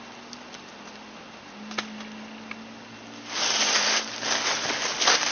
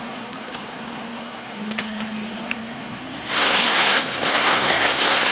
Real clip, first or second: first